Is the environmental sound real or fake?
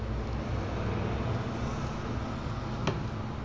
real